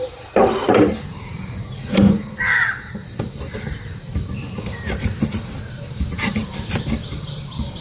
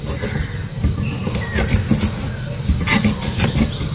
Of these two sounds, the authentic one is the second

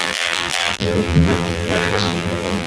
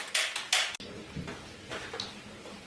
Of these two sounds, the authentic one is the second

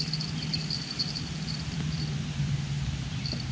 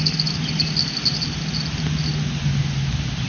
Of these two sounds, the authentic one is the second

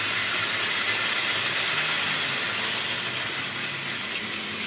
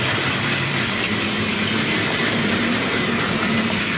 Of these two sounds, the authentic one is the first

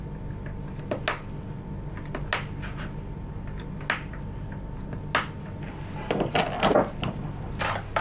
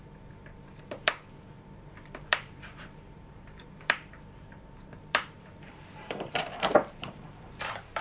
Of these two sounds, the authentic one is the first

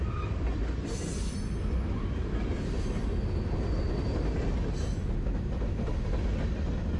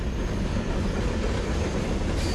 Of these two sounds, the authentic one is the first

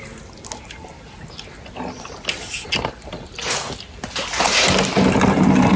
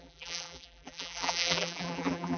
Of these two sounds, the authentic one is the first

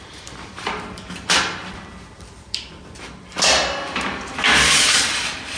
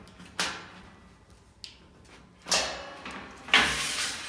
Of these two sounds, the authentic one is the second